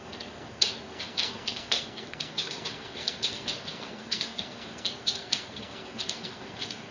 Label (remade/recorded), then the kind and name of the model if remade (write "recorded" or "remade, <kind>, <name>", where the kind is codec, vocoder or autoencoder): remade, codec, SNAC